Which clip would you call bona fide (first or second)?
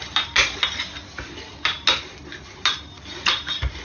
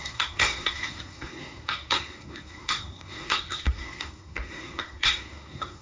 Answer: first